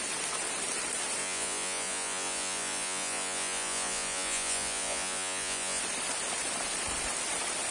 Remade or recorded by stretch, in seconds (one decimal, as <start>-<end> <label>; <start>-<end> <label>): 0.0-1.2 recorded; 1.2-5.8 remade; 5.8-7.7 recorded